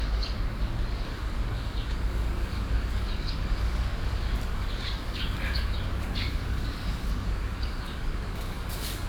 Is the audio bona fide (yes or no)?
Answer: no